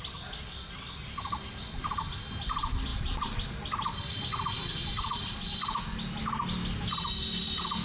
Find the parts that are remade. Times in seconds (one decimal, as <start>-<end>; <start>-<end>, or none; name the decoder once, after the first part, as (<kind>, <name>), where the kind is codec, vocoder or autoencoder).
none